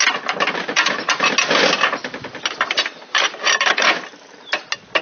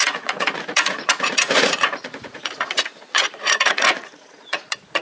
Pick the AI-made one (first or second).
second